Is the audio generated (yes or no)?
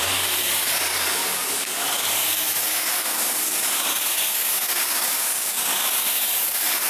yes